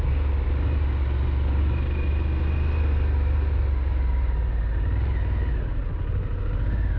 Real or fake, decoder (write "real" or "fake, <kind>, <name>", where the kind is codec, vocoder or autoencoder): real